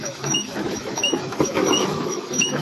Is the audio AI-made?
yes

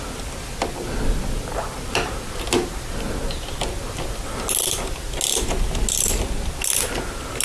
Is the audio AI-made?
no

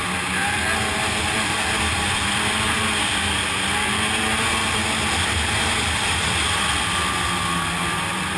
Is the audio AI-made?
no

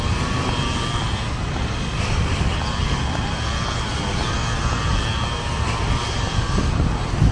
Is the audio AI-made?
no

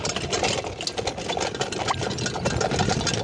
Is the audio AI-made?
no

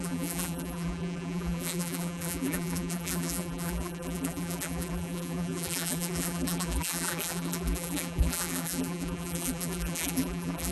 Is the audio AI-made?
yes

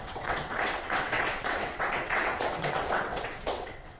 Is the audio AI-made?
yes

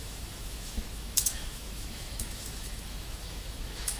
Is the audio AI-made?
yes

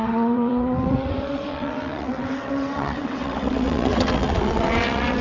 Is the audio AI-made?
yes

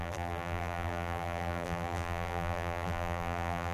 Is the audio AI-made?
yes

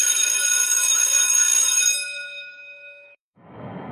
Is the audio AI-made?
yes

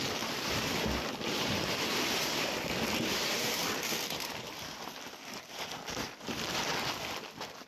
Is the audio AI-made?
no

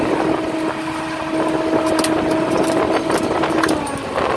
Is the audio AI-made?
no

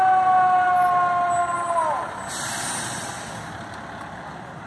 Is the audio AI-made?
no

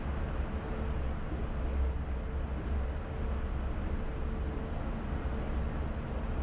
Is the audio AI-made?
no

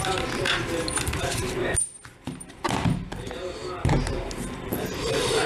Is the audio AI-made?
yes